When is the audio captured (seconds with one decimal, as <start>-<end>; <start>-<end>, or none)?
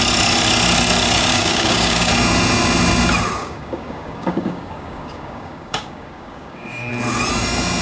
0.0-1.3; 2.1-3.4; 6.9-7.8